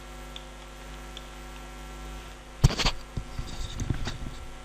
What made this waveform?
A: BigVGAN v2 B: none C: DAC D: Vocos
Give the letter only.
B